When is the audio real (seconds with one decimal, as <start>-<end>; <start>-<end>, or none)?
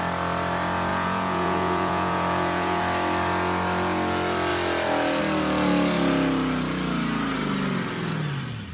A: 0.0-0.9; 2.8-8.7